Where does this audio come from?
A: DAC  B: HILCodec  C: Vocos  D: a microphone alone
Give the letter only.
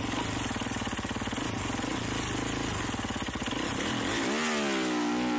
D